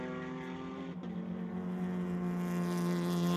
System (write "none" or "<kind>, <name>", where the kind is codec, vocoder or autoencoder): none